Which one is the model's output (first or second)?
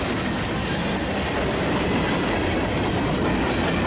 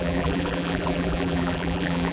second